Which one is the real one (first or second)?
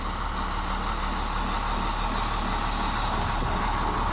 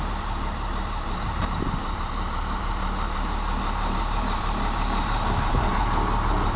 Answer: first